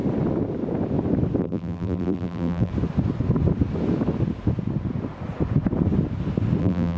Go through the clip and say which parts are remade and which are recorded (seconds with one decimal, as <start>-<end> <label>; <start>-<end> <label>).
0.0-1.4 recorded; 1.4-2.7 remade; 2.7-6.6 recorded; 6.6-7.0 remade